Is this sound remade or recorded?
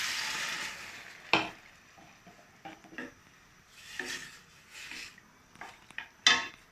recorded